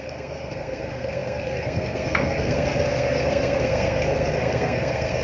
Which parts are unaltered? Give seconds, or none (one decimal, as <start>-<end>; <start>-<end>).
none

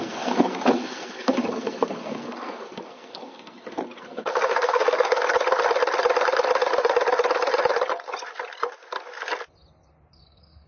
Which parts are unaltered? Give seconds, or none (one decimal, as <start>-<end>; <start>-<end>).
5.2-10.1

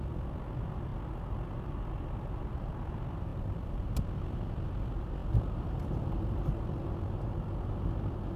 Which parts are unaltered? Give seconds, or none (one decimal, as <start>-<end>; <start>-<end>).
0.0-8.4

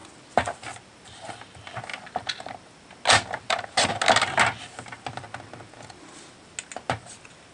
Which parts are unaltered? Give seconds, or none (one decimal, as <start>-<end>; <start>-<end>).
0.0-7.5